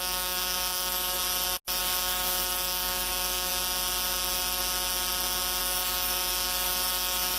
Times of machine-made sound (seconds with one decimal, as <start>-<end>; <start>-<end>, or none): 0.0-1.2; 1.8-3.5; 5.6-7.4